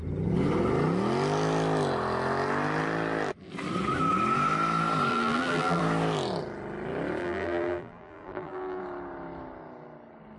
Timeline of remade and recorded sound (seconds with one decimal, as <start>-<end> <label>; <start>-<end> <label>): 0.0-5.1 recorded; 5.1-5.8 remade; 5.8-7.2 recorded; 7.2-8.8 remade; 8.8-10.4 recorded